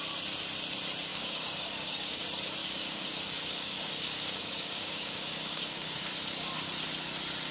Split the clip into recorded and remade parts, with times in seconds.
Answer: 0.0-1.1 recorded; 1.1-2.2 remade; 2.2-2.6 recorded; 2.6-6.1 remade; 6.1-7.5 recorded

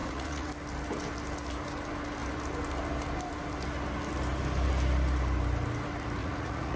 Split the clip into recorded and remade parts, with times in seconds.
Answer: 0.0-0.5 remade; 0.5-6.2 recorded; 6.2-6.8 remade

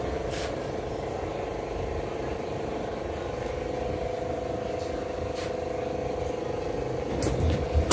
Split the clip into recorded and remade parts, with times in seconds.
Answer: 0.0-7.9 recorded

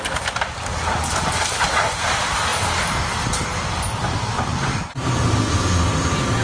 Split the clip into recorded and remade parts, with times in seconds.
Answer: 0.0-6.4 recorded

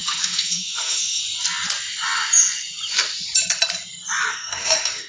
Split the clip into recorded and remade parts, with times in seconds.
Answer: 0.0-1.2 remade; 1.2-4.3 recorded; 4.3-5.1 remade

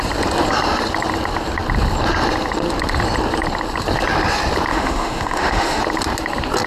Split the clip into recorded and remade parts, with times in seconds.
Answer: 0.0-4.7 recorded; 4.7-5.8 remade; 5.8-6.7 recorded

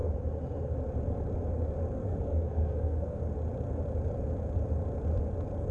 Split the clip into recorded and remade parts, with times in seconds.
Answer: 0.0-2.0 recorded; 2.0-3.2 remade; 3.2-5.7 recorded